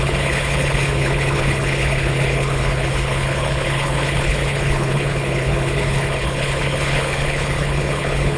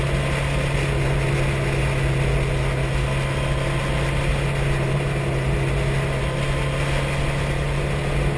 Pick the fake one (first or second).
first